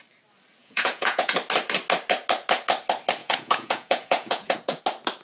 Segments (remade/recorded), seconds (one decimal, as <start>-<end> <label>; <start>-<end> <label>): 0.0-0.6 recorded; 0.6-1.3 remade; 1.3-3.2 recorded; 3.2-4.8 remade; 4.8-5.2 recorded